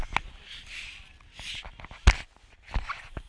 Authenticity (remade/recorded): recorded